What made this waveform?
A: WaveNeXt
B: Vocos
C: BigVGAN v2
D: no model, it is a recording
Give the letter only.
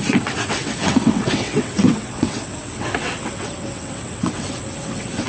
A